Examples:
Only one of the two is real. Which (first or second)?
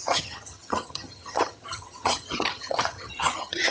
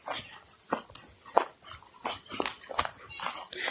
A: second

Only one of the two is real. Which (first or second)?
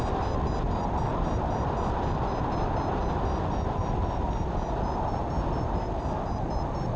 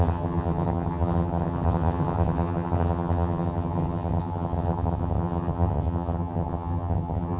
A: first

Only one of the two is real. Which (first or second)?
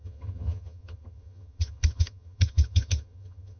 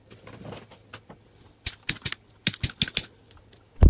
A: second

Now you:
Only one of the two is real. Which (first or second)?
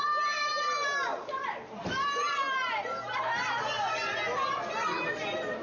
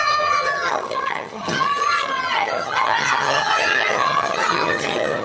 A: first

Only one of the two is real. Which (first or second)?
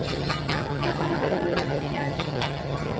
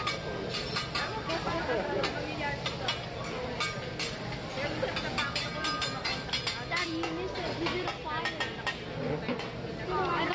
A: second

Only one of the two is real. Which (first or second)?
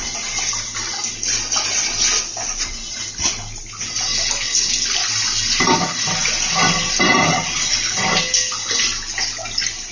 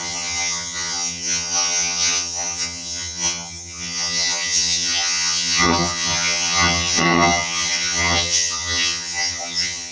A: first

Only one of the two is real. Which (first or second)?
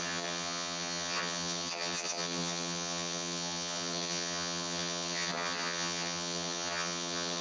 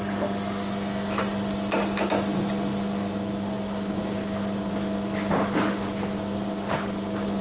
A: second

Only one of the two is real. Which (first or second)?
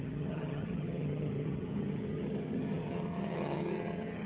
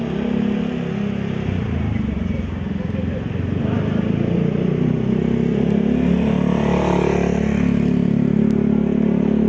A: second